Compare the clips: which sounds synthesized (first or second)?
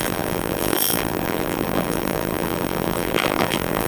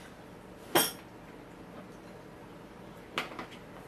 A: first